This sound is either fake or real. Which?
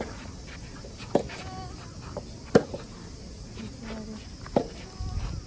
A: real